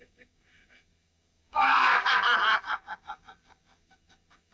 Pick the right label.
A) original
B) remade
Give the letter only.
B